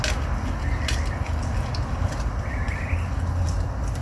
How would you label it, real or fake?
real